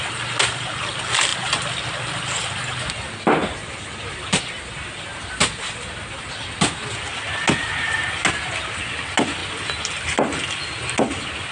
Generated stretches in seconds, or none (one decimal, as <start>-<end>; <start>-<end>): none